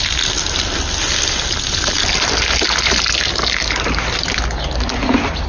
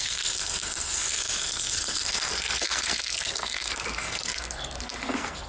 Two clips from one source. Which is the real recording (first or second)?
first